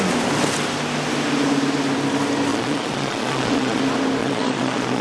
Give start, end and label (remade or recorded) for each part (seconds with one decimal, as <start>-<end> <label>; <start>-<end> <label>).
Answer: 0.0-2.5 recorded; 2.5-3.8 remade; 3.8-4.2 recorded; 4.2-5.0 remade